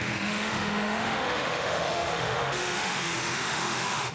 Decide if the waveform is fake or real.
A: fake